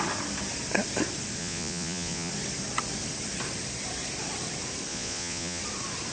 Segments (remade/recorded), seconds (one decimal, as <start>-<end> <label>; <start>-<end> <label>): 0.0-1.4 recorded; 1.4-2.3 remade; 2.3-4.9 recorded; 4.9-5.6 remade; 5.6-6.1 recorded